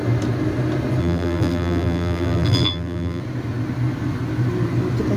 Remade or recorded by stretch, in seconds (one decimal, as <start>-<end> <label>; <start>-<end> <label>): 0.0-1.0 recorded; 1.0-3.2 remade; 3.2-5.2 recorded

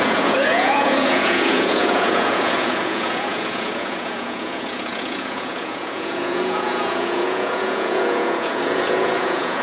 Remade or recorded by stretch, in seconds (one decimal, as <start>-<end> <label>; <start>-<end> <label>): 0.0-9.6 remade

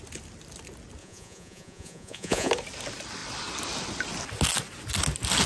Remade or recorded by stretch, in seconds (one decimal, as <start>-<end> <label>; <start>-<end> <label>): 0.0-1.0 recorded; 1.0-2.5 remade; 2.5-5.5 recorded

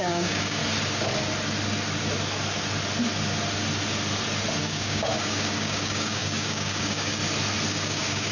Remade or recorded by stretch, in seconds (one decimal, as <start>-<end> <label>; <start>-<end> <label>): 0.0-0.6 remade; 0.6-4.6 recorded; 4.6-7.2 remade; 7.2-7.7 recorded; 7.7-8.3 remade

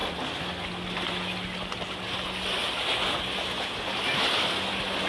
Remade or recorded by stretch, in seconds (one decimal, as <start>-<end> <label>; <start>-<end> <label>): 0.0-5.1 recorded

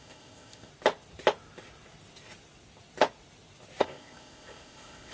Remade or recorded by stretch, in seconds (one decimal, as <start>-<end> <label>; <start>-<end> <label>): 0.0-0.7 remade; 0.7-3.8 recorded; 3.8-5.1 remade